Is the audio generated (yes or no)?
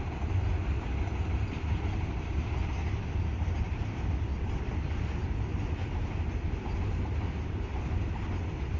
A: no